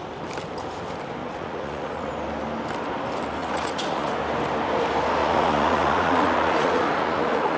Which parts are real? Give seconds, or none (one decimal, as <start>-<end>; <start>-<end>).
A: 0.0-1.2; 2.1-3.4; 4.1-5.2